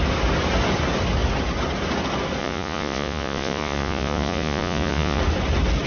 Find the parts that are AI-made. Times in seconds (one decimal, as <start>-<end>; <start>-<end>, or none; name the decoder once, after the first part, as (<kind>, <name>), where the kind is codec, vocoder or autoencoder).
2.4-5.2 (vocoder, Vocos)